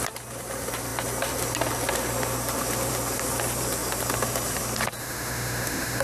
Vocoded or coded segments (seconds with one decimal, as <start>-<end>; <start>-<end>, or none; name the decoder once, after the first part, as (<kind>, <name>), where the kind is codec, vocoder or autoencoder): 5.0-6.0 (autoencoder, DAC-VAE)